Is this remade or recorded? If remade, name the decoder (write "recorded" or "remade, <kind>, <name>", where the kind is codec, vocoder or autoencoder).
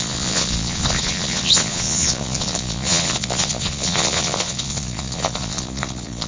remade, vocoder, Vocos